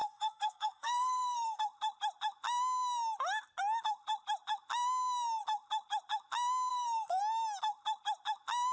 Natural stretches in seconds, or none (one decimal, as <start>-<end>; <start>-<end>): 1.6-6.7; 7.2-8.7